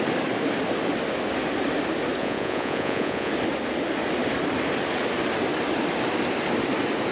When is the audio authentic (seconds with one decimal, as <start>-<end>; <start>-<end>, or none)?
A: 0.0-2.2; 3.3-7.1